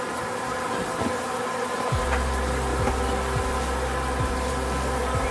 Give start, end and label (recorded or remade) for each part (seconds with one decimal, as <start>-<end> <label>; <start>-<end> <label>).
0.0-5.3 recorded